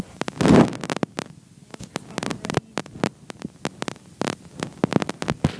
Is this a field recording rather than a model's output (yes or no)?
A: yes